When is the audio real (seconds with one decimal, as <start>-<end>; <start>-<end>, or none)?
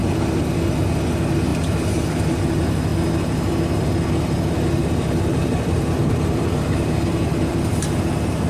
0.7-1.5; 2.4-2.9; 3.5-4.8; 8.0-8.5